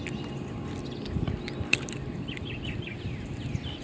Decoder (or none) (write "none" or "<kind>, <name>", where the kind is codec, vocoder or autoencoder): none